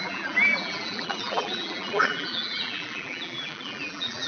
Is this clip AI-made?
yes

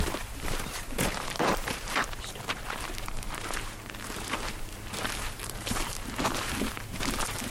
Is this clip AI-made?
yes